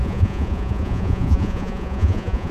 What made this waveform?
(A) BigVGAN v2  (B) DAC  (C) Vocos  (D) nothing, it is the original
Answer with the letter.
C